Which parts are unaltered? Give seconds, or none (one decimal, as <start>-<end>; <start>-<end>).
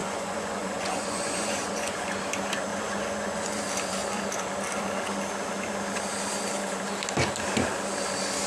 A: 2.2-2.7; 3.6-8.5